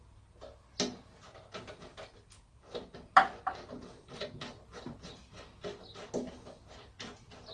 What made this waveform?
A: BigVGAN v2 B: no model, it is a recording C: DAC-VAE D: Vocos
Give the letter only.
B